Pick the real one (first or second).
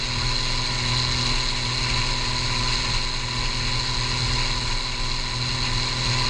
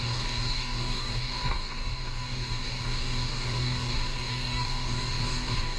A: first